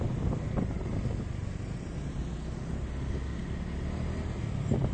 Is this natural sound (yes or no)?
yes